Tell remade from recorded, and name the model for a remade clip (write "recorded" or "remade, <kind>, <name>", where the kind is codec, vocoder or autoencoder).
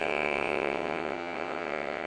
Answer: remade, vocoder, WaveNeXt